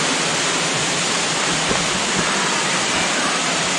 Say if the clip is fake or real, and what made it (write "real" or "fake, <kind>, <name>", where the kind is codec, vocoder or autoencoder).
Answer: fake, vocoder, BigVGAN v2